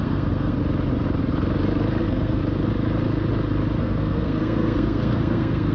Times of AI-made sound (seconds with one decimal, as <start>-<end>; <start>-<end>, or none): 0.0-0.6; 2.0-2.4; 3.8-5.7